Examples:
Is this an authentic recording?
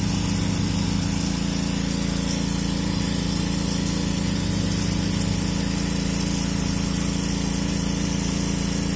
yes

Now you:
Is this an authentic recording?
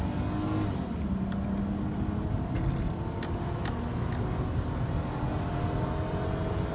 yes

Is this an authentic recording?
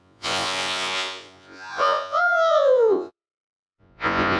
no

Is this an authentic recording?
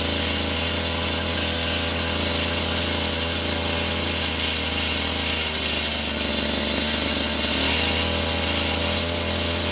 yes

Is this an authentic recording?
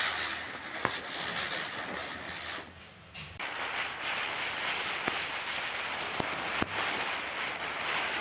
yes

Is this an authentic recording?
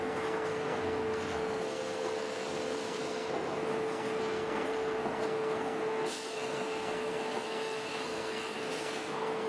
no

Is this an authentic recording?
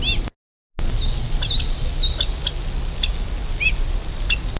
yes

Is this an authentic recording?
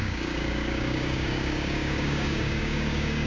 no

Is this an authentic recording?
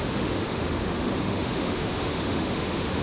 no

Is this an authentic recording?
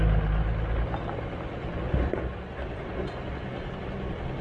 yes